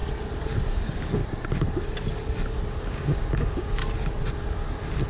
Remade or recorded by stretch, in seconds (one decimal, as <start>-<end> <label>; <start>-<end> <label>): 0.0-0.7 recorded; 0.7-1.2 remade; 1.2-2.8 recorded; 2.8-3.8 remade; 3.8-5.1 recorded